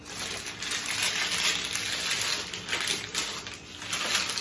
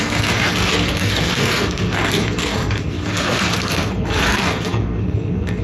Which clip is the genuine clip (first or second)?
first